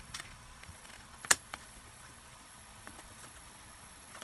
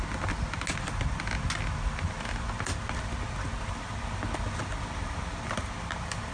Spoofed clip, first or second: first